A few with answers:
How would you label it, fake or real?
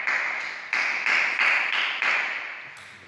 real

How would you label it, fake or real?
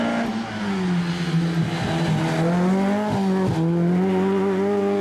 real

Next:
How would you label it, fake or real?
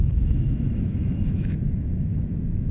fake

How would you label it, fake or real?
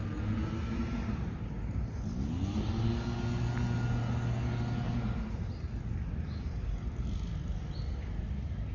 real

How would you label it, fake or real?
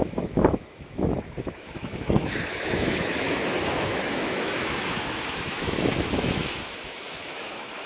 fake